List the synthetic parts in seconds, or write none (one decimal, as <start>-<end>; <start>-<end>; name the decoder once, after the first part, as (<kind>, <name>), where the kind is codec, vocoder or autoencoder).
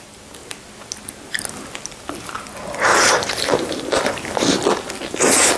2.9-3.9 (vocoder, BigVGAN v2)